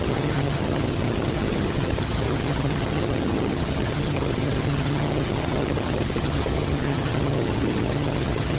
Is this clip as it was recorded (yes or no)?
no